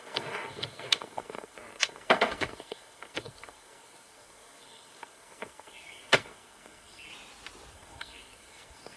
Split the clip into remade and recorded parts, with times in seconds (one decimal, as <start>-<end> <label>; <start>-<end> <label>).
0.0-7.1 remade; 7.1-7.7 recorded; 7.7-9.0 remade